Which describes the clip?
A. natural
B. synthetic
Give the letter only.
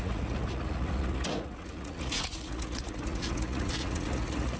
B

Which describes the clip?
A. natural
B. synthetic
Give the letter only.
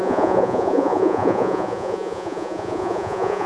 B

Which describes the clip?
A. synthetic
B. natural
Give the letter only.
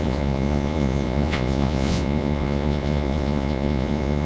A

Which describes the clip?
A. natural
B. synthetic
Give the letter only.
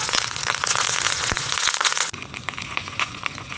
B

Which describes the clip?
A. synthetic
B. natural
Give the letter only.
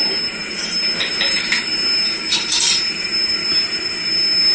B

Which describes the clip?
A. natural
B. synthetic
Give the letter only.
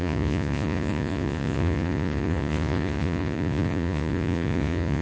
B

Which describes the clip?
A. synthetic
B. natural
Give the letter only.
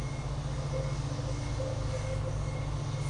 B